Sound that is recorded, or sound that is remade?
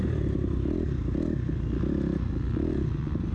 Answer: recorded